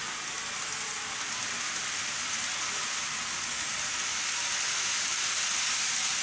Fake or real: real